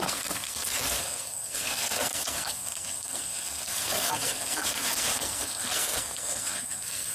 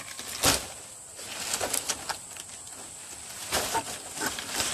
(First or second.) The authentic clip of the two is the second